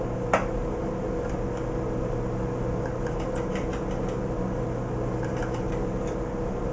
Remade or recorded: recorded